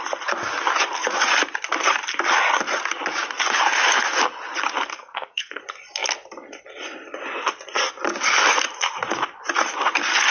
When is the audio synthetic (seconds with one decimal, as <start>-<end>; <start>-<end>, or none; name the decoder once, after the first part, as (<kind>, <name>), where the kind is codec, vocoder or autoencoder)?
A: 4.9-5.6 (codec, SNAC)